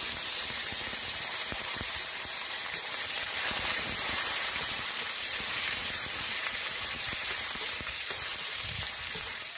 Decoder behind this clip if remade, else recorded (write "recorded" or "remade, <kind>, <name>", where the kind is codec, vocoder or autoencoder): remade, vocoder, BigVGAN v2